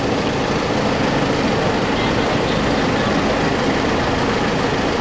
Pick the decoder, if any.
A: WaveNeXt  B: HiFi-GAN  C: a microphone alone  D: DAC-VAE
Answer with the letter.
C